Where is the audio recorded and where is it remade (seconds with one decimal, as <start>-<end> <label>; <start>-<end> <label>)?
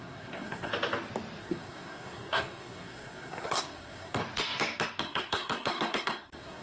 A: 0.0-0.7 remade; 0.7-1.4 recorded; 1.4-4.2 remade; 4.2-5.0 recorded; 5.0-6.6 remade